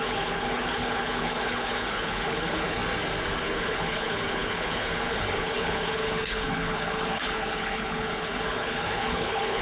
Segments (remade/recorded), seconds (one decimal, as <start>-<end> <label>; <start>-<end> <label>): 0.0-2.8 remade; 2.8-3.4 recorded; 3.4-9.6 remade